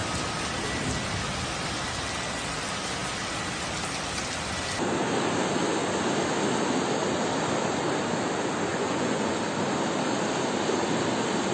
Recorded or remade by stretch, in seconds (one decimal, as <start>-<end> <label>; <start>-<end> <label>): 0.0-8.7 recorded; 8.7-9.4 remade; 9.4-11.5 recorded